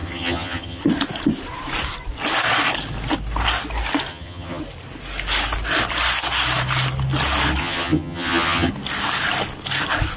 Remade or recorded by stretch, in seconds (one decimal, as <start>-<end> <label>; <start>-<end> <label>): 0.0-0.8 remade; 0.8-4.1 recorded; 4.1-4.6 remade; 4.6-7.6 recorded; 7.6-8.7 remade; 8.7-10.2 recorded